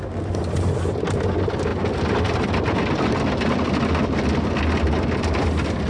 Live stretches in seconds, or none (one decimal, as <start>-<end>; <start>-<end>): 0.0-5.9